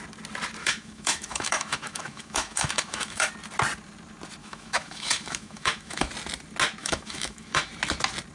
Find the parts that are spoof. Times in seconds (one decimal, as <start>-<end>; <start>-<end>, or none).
0.6-3.3; 4.4-6.1; 6.8-7.7